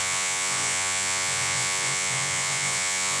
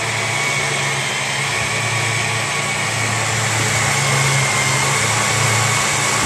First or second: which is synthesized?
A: first